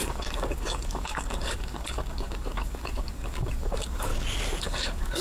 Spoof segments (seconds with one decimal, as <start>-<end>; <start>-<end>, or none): 0.0-4.1; 4.6-5.2